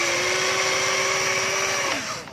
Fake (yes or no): no